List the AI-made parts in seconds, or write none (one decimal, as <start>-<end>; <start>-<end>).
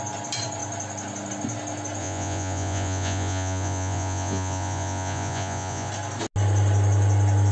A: 2.0-5.9